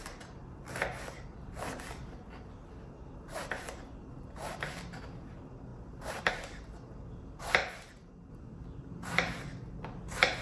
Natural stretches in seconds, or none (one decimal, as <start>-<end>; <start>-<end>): 0.0-10.4